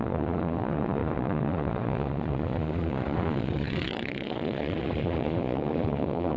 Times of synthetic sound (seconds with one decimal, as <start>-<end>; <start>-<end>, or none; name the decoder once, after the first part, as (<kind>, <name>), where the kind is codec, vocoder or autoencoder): 0.0-6.4 (vocoder, Vocos)